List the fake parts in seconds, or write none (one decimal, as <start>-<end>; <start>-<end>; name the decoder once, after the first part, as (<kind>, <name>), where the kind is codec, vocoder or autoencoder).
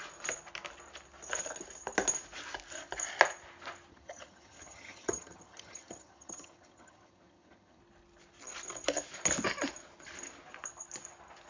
3.9-7.8 (vocoder, HiFi-GAN)